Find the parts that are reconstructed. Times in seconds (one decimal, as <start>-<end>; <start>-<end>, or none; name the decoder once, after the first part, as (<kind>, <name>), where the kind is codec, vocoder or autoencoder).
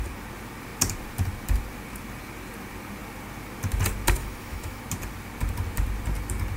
4.2-4.8 (autoencoder, DAC-VAE)